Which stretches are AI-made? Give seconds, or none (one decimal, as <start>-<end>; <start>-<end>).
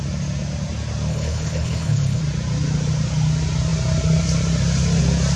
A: 1.1-2.2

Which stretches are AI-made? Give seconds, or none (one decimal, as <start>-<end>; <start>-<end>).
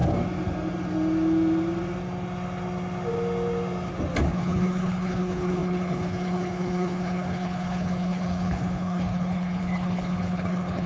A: 4.2-10.9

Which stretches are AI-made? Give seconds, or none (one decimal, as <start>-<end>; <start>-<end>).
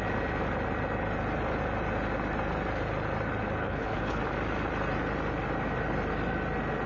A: 3.6-4.2